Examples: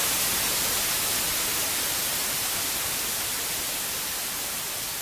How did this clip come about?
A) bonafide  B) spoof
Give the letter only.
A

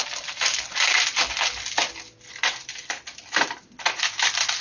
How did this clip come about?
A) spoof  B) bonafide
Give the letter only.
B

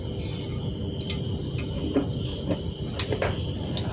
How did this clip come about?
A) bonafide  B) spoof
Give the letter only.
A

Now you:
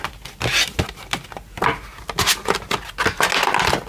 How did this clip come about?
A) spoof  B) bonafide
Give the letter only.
B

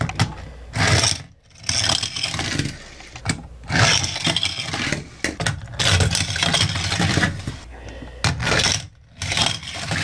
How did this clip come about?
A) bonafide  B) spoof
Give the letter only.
A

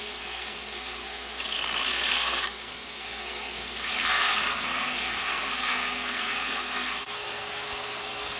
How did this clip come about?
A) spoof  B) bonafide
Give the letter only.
A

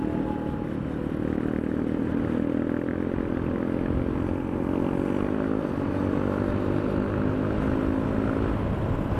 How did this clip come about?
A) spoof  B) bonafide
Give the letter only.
B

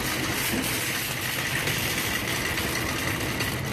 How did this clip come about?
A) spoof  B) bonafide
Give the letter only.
B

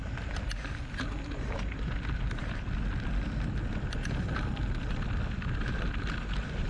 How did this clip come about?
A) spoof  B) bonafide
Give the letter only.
B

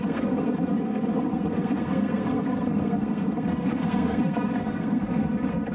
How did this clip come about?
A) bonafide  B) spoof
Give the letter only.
B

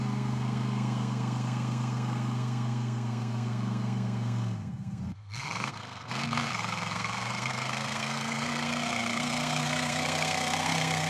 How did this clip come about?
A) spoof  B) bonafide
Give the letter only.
A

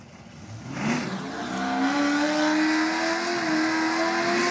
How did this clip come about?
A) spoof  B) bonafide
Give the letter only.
B